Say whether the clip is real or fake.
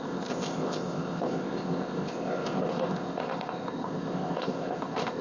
fake